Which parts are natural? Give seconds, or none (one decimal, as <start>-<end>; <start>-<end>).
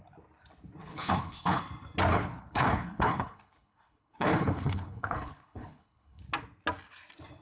0.0-0.8; 1.6-2.1; 6.2-7.4